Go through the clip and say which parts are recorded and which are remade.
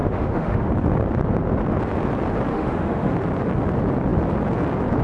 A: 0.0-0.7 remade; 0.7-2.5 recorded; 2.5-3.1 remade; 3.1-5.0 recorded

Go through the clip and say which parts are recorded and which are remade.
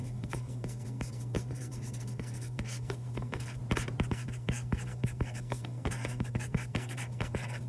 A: 0.0-3.6 remade; 3.6-4.1 recorded; 4.1-7.7 remade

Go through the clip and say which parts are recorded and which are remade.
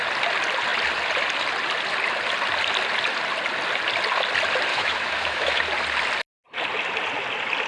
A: 0.0-4.7 recorded; 4.7-5.6 remade; 5.6-7.7 recorded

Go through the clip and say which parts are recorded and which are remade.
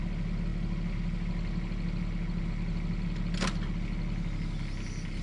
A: 0.0-5.2 recorded